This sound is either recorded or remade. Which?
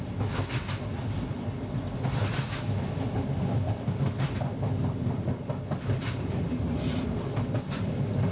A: recorded